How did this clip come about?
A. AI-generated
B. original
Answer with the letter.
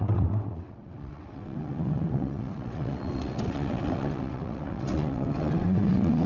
A